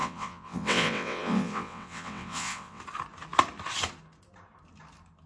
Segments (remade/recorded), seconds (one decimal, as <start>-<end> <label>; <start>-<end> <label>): 0.0-2.8 remade; 2.8-5.3 recorded